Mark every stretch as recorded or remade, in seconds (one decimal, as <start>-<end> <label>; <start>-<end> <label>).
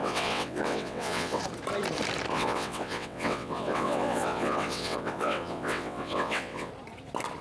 0.0-1.4 remade; 1.4-2.3 recorded; 2.3-6.7 remade; 6.7-7.4 recorded